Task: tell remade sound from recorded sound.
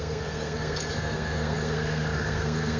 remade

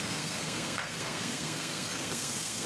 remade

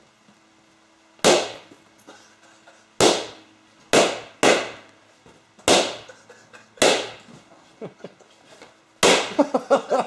recorded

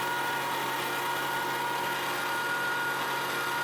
recorded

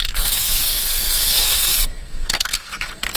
remade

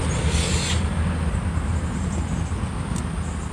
recorded